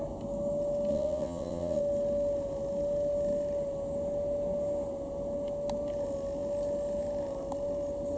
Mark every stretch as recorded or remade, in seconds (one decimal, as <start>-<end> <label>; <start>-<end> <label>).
0.0-0.9 recorded; 0.9-1.8 remade; 1.8-8.2 recorded